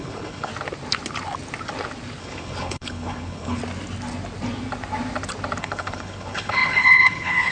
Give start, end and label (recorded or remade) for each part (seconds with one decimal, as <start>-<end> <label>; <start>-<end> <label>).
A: 0.0-0.5 remade; 0.5-2.2 recorded; 2.2-3.6 remade; 3.6-5.6 recorded; 5.6-7.5 remade